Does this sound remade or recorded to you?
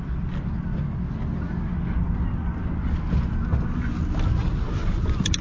recorded